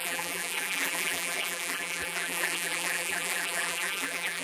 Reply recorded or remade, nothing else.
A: remade